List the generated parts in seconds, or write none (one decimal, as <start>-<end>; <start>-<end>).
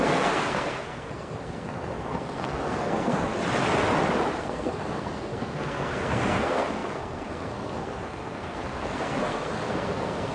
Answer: 0.0-3.3; 4.4-10.3